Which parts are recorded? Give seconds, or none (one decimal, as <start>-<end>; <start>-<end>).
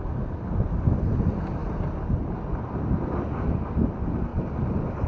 0.0-5.1